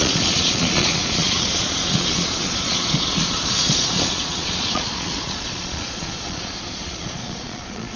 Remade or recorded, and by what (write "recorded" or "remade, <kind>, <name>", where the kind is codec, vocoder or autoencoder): remade, vocoder, Vocos